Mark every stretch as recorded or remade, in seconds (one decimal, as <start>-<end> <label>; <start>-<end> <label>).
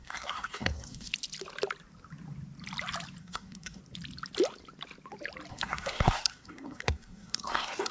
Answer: 0.0-1.1 remade; 1.1-3.2 recorded; 3.2-3.8 remade; 3.8-5.5 recorded; 5.5-7.9 remade